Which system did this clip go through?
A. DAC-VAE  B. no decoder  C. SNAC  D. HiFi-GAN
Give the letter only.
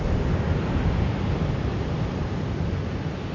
B